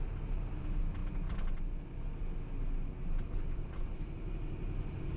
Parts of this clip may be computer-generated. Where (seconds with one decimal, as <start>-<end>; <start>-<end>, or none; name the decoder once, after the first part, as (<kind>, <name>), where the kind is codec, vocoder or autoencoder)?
none